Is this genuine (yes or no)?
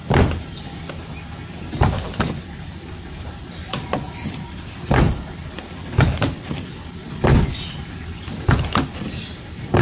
yes